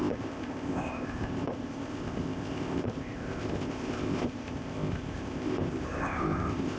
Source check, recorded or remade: remade